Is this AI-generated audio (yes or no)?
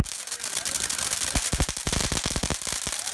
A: no